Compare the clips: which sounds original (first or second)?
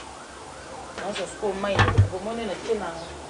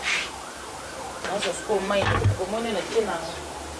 first